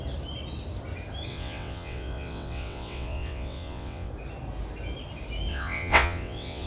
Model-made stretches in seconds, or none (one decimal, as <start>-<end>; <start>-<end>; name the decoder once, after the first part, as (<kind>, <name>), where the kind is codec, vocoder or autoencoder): 1.3-4.1 (vocoder, WaveNeXt); 5.5-6.7